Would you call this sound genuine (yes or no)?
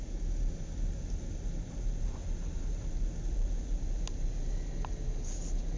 yes